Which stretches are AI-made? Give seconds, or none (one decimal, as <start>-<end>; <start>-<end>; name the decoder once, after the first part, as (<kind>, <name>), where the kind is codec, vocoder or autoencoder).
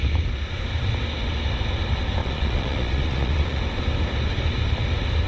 2.2-3.6 (vocoder, Vocos)